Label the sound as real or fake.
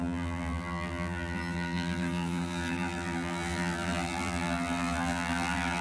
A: fake